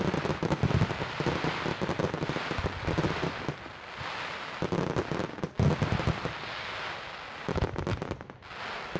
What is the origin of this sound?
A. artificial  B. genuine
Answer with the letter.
B